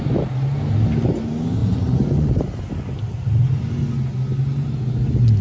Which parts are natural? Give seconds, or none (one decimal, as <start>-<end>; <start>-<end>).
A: 0.0-1.6; 2.4-5.4

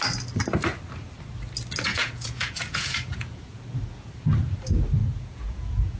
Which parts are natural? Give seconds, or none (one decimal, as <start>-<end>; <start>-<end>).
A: 0.0-1.9; 3.6-5.0